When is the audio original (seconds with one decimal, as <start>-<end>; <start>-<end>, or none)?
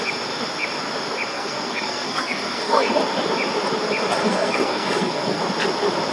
0.0-1.3; 2.9-4.2; 5.4-6.1